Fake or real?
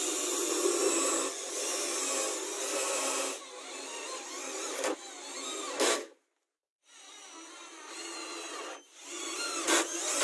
real